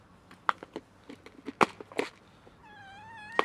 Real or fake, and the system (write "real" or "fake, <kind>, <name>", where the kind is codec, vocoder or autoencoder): real